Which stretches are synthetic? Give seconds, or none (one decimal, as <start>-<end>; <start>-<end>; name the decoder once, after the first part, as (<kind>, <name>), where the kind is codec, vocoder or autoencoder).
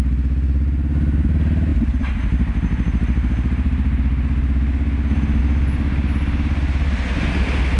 none